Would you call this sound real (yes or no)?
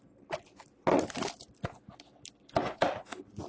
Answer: yes